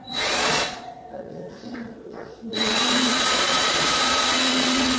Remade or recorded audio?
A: remade